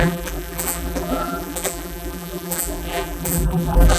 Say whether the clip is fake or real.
fake